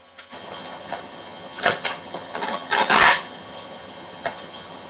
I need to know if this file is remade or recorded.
remade